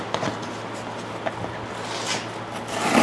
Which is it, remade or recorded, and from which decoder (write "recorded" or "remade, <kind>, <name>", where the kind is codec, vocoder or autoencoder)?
recorded